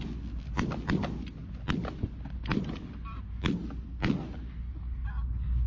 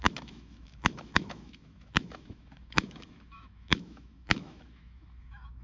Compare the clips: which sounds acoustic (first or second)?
first